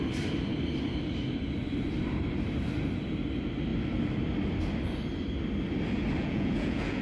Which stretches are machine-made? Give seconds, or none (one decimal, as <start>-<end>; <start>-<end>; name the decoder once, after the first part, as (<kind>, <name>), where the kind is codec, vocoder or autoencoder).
6.2-7.0 (vocoder, Vocos)